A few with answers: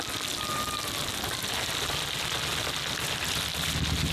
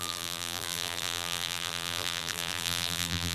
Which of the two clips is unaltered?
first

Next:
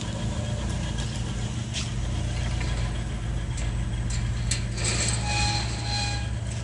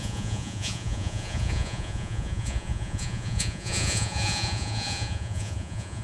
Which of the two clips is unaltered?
first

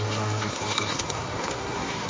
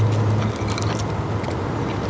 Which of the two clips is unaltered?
second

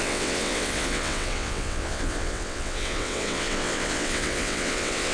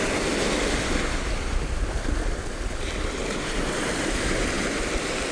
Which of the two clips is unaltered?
second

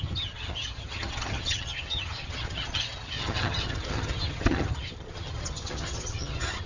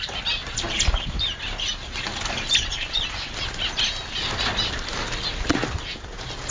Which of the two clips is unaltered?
second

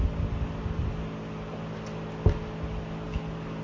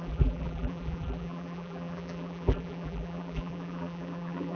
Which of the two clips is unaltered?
first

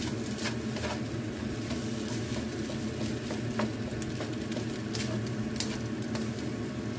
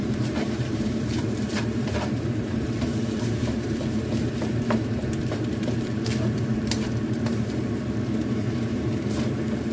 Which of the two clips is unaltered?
first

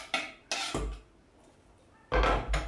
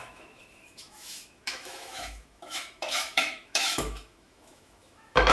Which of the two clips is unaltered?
first